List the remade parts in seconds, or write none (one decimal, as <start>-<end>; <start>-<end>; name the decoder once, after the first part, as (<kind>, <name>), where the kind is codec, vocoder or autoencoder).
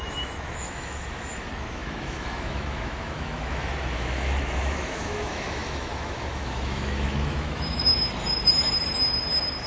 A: 0.0-7.9 (autoencoder, DAC-VAE)